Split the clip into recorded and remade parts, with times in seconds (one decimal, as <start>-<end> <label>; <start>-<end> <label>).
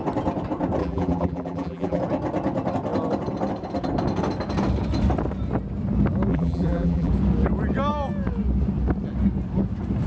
0.0-0.8 recorded; 0.8-2.0 remade; 2.0-6.3 recorded; 6.3-7.1 remade; 7.1-10.1 recorded